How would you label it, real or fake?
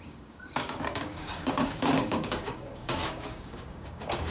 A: fake